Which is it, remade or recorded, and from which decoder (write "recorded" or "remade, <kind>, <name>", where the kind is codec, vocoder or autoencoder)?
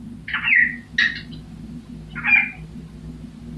recorded